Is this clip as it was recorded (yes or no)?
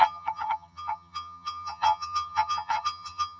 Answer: no